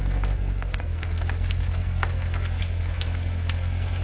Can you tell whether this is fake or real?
fake